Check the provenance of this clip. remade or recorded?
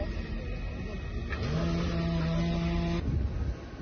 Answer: recorded